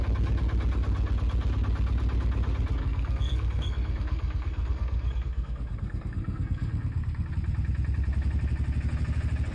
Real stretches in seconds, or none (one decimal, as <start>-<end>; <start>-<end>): 0.0-2.8; 7.3-9.5